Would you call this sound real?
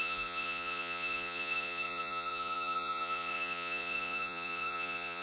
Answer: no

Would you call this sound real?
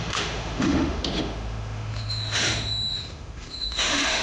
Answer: no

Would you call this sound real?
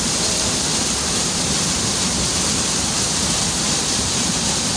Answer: no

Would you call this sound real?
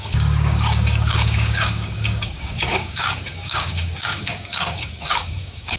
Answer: no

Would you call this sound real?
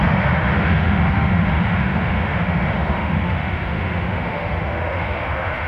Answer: no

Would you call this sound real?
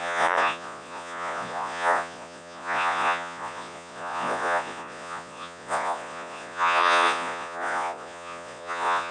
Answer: no